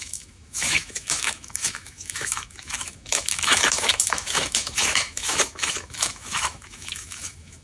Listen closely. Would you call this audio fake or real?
fake